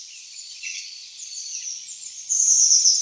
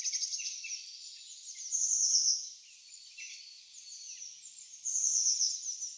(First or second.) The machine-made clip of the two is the first